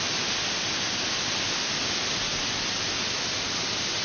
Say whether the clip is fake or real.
real